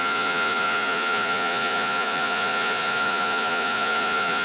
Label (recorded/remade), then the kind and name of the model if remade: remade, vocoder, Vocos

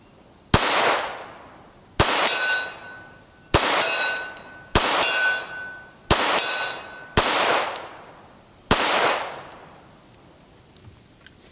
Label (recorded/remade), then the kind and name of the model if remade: recorded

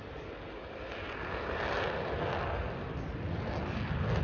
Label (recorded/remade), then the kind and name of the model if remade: recorded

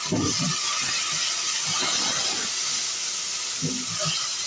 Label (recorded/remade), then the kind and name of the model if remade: recorded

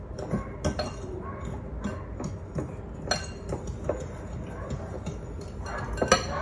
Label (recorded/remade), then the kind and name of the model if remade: recorded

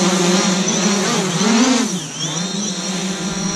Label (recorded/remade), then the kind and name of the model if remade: remade, vocoder, Vocos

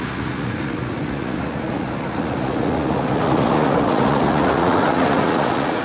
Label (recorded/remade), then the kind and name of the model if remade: remade, vocoder, Vocos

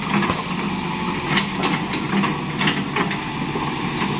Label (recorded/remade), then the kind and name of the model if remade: recorded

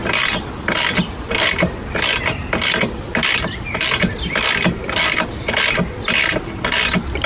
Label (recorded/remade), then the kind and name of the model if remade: recorded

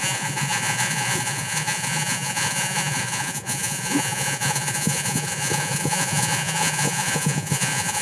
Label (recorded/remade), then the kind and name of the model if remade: remade, vocoder, Vocos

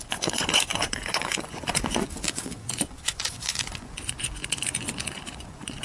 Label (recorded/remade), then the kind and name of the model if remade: remade, vocoder, Vocos